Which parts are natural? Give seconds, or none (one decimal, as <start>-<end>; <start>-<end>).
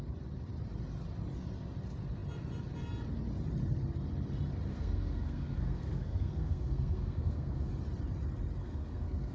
0.0-4.7; 7.7-8.6